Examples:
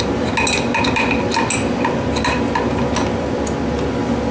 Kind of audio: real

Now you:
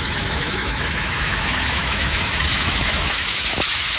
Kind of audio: fake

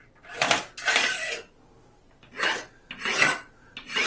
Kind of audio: real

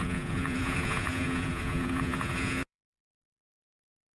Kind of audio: fake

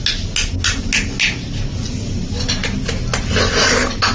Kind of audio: real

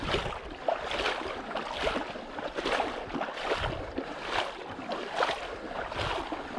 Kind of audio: real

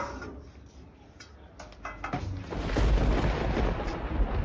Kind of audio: real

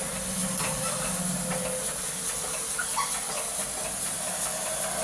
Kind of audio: real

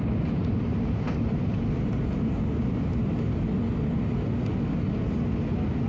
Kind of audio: real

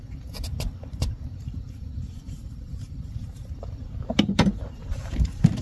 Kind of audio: fake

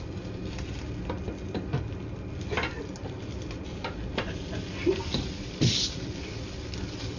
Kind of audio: real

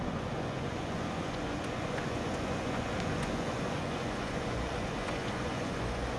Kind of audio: fake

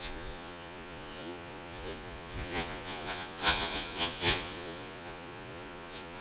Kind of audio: fake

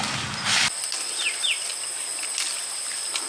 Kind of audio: real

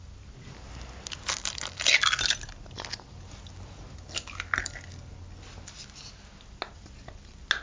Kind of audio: real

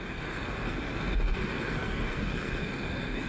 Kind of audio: fake